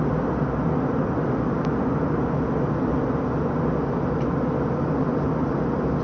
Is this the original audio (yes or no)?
yes